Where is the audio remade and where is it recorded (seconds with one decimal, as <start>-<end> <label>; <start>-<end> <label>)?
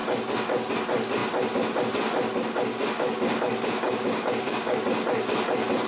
0.0-2.7 recorded; 2.7-4.8 remade; 4.8-5.9 recorded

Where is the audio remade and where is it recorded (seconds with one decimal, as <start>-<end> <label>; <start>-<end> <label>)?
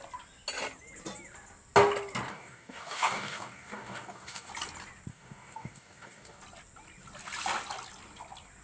0.0-2.3 recorded; 2.3-4.5 remade; 4.5-5.1 recorded; 5.1-6.4 remade; 6.4-8.6 recorded